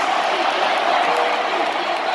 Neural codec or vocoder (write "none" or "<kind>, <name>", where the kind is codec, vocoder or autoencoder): none